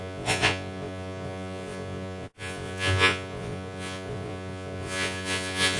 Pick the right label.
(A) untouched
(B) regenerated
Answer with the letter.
B